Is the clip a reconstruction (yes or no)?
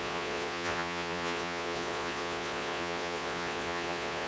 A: yes